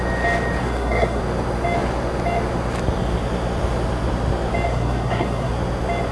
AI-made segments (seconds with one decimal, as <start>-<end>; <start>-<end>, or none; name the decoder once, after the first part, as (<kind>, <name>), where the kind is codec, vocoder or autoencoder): 0.6-1.2 (codec, SNAC); 4.7-5.5